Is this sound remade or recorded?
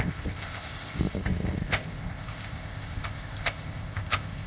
remade